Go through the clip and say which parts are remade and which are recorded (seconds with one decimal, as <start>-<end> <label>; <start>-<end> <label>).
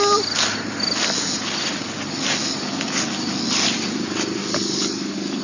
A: 0.0-4.4 recorded; 4.4-5.4 remade